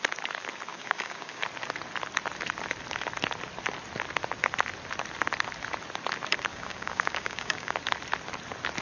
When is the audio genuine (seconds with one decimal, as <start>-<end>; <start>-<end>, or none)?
0.0-0.7; 1.4-6.5; 7.7-8.8